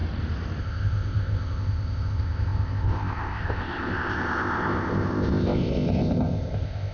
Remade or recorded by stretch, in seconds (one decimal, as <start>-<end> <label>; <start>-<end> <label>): 0.0-0.6 recorded; 0.6-6.9 remade